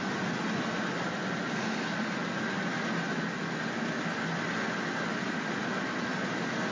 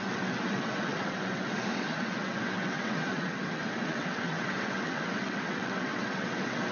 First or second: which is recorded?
first